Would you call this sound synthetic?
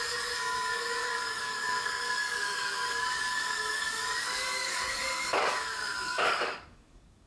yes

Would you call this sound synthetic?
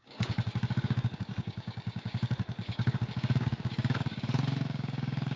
yes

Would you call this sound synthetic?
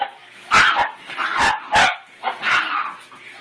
no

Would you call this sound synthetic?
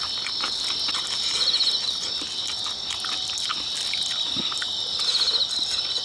no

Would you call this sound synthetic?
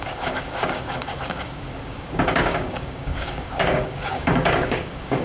yes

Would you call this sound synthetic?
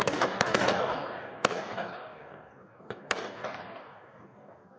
yes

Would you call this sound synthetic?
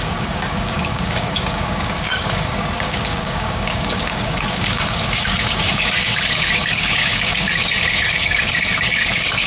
yes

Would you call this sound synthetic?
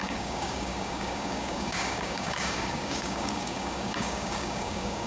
yes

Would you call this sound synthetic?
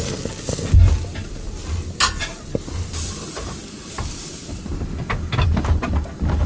no